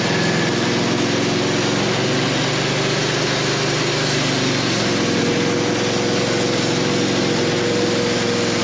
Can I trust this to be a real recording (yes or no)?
yes